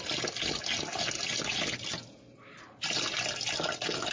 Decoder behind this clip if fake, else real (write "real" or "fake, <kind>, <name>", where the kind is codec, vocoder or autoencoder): real